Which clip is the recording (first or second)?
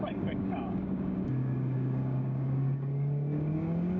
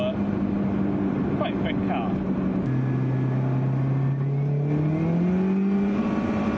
second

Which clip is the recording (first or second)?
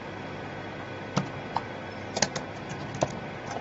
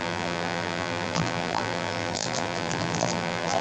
first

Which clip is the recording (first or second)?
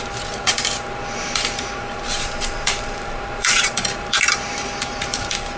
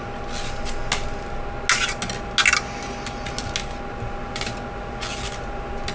second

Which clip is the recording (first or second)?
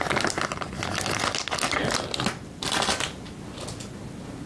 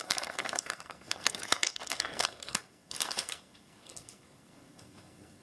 first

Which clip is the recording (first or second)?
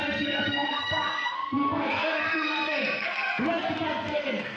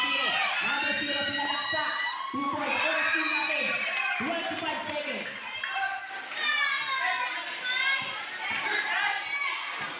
second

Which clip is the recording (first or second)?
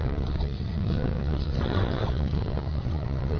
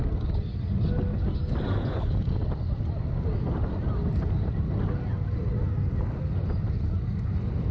second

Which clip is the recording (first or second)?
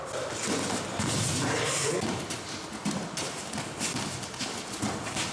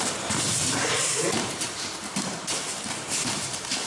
first